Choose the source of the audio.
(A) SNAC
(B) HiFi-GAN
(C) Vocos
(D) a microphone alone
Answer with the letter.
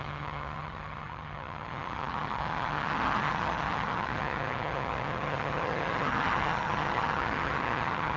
B